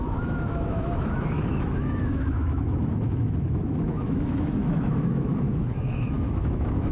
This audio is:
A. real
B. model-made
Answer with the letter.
B